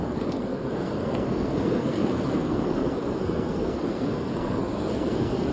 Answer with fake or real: fake